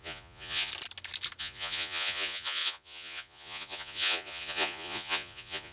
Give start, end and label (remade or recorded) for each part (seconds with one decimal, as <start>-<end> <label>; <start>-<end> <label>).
0.0-0.7 remade; 0.7-1.4 recorded; 1.4-5.7 remade